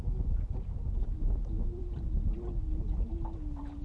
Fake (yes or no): no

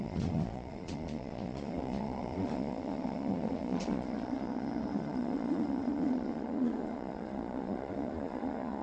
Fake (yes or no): yes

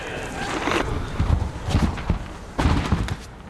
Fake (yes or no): no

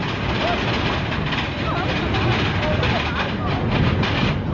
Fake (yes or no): no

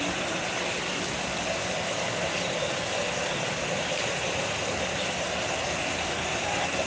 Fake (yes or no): no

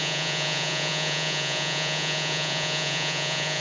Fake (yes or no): yes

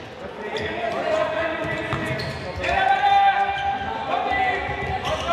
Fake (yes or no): no